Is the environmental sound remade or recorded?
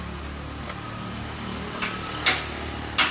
recorded